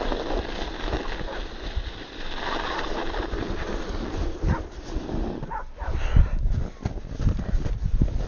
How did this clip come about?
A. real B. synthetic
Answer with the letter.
A